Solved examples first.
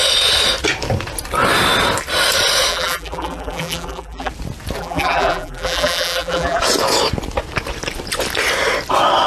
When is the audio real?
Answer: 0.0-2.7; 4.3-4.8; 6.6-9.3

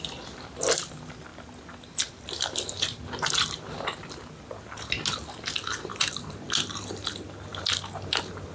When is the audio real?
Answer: 0.0-8.5

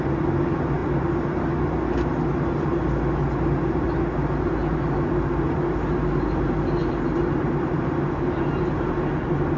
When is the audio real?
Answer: 0.0-9.6

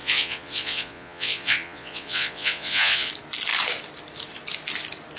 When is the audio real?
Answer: 3.1-5.2

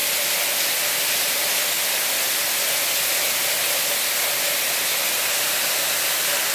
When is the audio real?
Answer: 0.0-6.5

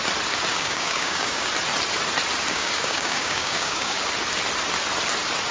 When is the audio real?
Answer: 0.0-0.5; 1.5-2.5; 4.0-5.5

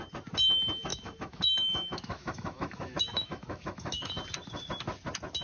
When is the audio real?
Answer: 0.0-0.9; 4.1-5.4

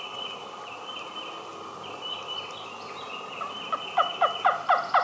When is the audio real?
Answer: 0.0-5.0